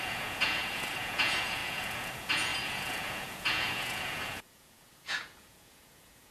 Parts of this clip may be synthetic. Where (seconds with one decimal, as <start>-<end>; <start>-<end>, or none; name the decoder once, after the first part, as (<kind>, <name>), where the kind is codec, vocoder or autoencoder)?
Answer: 0.0-6.3 (vocoder, Vocos)